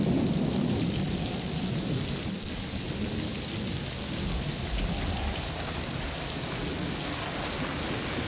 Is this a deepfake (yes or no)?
no